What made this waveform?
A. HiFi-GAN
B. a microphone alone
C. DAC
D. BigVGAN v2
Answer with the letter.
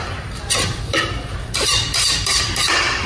D